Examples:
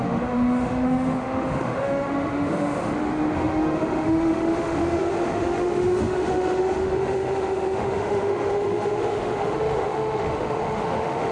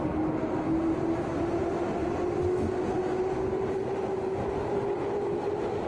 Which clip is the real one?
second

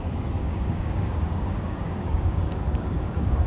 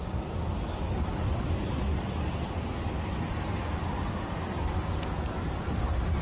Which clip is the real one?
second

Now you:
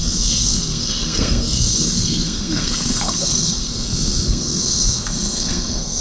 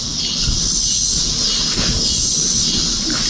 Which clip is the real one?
second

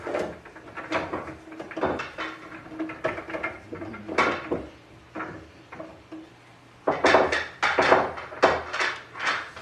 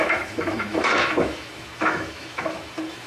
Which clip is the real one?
first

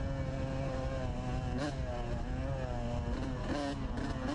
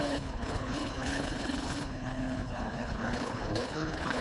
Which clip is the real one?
first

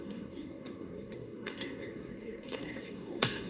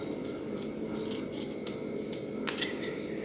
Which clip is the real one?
second